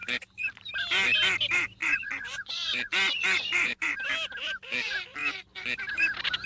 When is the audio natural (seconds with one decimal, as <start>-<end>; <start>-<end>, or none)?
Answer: 0.0-1.8; 4.0-6.5